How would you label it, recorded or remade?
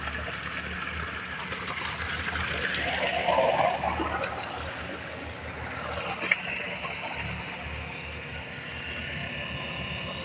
recorded